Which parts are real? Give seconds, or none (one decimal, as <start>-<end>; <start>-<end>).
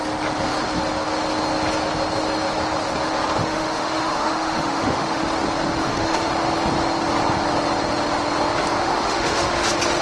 0.0-3.4; 5.2-5.8; 6.3-8.8; 9.5-10.0